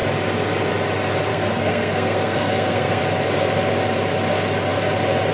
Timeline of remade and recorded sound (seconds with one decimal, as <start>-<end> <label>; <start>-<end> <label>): 0.0-1.3 recorded; 1.3-3.0 remade; 3.0-5.3 recorded